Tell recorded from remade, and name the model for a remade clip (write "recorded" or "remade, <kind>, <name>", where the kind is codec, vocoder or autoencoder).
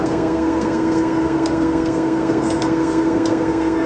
remade, codec, SNAC